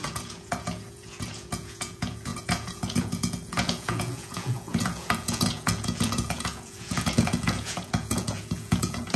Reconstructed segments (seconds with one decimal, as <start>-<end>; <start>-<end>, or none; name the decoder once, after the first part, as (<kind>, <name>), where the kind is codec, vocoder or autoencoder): 0.0-9.2 (vocoder, Vocos)

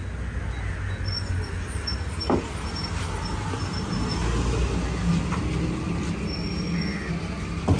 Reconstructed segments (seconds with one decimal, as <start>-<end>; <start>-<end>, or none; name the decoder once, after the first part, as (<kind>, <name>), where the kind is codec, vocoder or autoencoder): none

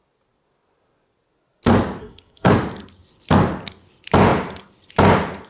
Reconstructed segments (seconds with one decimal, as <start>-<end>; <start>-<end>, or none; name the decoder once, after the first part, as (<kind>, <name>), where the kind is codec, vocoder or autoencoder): 2.0-2.5 (codec, SNAC)

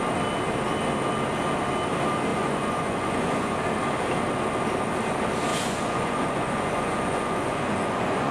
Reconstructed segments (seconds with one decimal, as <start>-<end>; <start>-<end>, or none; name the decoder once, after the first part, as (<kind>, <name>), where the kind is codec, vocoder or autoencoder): 2.3-3.5 (vocoder, Vocos); 5.5-8.3

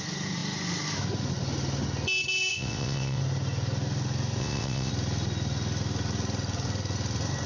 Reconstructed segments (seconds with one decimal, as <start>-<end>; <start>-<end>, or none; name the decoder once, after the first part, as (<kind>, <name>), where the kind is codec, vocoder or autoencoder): 2.5-3.2 (vocoder, WaveNeXt); 4.4-4.9